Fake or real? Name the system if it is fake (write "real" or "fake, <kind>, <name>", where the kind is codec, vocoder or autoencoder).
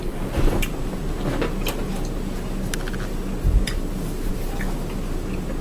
real